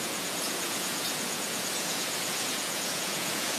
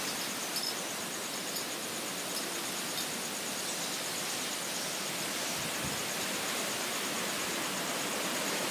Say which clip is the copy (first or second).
first